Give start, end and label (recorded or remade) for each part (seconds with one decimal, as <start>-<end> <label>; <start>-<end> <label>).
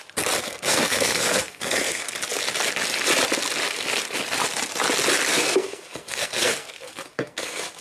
0.0-0.4 recorded; 0.4-2.1 remade; 2.1-5.3 recorded; 5.3-7.8 remade